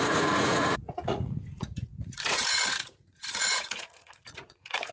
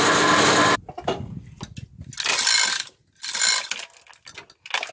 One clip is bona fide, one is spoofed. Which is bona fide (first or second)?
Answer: second